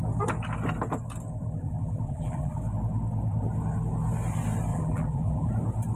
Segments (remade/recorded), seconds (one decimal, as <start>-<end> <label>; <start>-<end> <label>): 0.0-1.4 recorded; 1.4-2.6 remade; 2.6-4.7 recorded; 4.7-5.5 remade; 5.5-6.0 recorded